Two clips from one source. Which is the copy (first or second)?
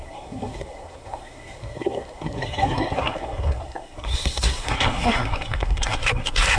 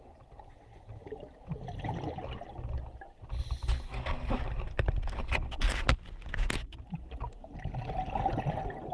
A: first